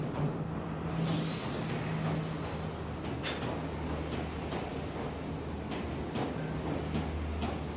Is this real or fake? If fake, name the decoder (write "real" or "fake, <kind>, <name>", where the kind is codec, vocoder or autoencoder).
real